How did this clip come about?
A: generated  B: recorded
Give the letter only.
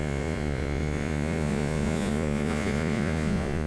A